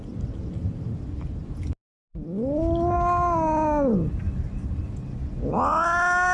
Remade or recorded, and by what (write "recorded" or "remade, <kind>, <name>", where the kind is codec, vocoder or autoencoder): recorded